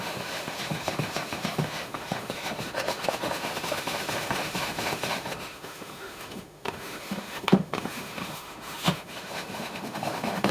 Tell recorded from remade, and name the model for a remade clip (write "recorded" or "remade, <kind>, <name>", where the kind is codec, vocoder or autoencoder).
remade, autoencoder, DAC-VAE